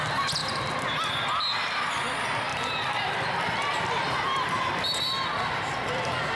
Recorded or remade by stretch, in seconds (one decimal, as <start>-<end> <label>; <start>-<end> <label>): 0.0-2.5 recorded; 2.5-6.4 remade